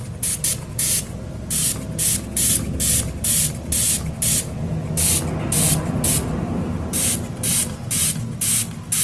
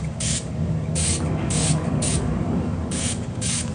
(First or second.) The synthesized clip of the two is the second